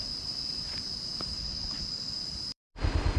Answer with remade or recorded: remade